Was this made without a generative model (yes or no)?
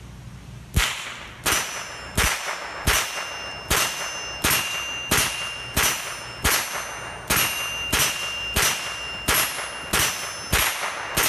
yes